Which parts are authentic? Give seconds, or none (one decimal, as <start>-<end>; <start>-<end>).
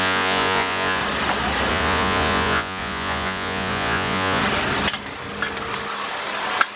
1.0-1.7; 4.4-6.8